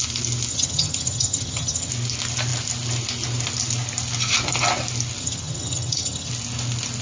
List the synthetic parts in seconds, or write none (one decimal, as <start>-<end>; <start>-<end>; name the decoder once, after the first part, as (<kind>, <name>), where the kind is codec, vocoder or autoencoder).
0.5-1.9 (vocoder, HiFi-GAN); 5.2-6.3